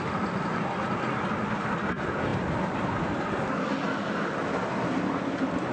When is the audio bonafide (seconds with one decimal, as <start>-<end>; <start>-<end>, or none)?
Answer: 0.0-5.7